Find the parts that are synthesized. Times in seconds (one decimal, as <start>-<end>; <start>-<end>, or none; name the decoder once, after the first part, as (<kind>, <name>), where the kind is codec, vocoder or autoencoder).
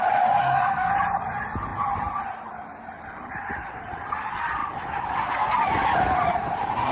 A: 0.4-0.9 (codec, SNAC)